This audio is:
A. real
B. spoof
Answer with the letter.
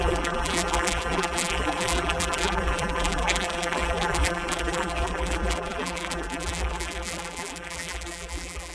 B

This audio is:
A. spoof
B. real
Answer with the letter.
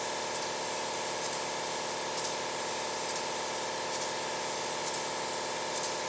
B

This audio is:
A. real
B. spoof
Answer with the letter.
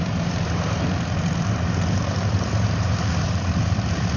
B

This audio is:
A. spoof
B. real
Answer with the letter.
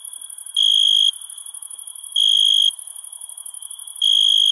B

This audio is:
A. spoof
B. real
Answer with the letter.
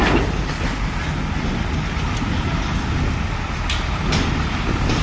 B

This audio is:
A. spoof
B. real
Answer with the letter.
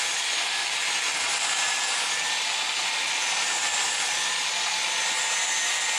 B